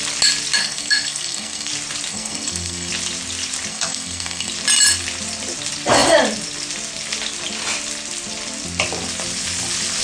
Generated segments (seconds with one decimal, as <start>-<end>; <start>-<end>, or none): 0.6-1.7; 2.1-2.9; 3.7-4.5